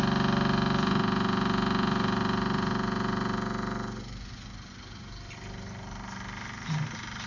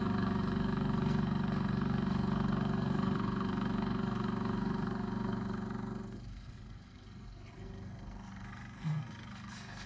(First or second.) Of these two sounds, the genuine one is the first